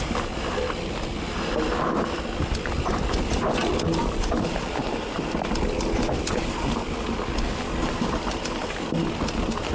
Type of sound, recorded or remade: recorded